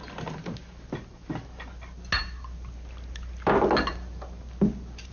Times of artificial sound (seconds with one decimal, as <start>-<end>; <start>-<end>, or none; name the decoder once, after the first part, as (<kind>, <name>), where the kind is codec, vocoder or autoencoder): none